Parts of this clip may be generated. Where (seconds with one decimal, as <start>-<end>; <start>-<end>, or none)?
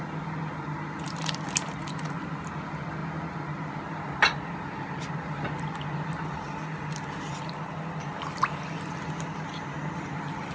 none